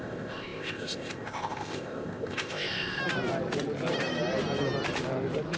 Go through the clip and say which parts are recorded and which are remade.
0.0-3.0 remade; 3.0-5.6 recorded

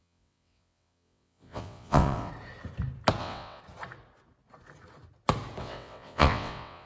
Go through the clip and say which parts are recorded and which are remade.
0.0-2.3 remade; 2.3-3.2 recorded; 3.2-3.6 remade; 3.6-5.6 recorded; 5.6-6.9 remade

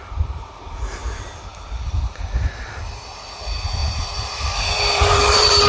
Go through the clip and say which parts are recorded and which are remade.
0.0-5.7 remade

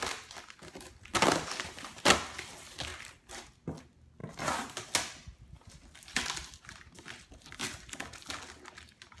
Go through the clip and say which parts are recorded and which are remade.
0.0-9.2 recorded

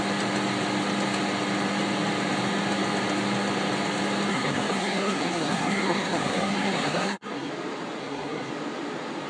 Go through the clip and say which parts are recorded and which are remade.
0.0-4.3 recorded; 4.3-7.5 remade; 7.5-8.0 recorded; 8.0-8.5 remade; 8.5-9.3 recorded

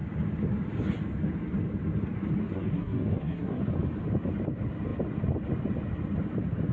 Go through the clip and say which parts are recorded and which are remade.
0.0-2.4 recorded; 2.4-3.6 remade; 3.6-6.7 recorded

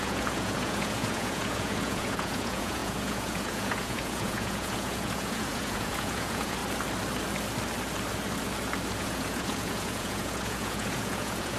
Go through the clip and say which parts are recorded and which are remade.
0.0-6.6 remade; 6.6-8.9 recorded; 8.9-11.6 remade